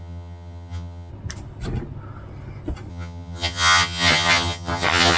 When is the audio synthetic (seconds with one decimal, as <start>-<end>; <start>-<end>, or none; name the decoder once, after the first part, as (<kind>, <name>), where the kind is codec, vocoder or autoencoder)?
0.0-1.1 (vocoder, HiFi-GAN); 2.9-5.2